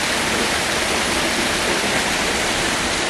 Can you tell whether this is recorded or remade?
recorded